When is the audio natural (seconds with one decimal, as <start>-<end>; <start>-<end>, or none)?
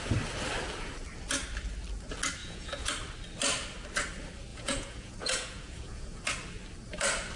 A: 0.0-2.4; 2.9-4.5; 6.2-7.4